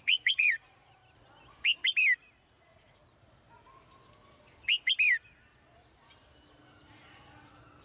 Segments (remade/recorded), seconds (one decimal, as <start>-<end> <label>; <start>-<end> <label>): 0.0-1.0 remade; 1.0-2.4 recorded; 2.4-3.0 remade; 3.0-7.8 recorded